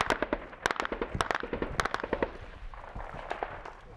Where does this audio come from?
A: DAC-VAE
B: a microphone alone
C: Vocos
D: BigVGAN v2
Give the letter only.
B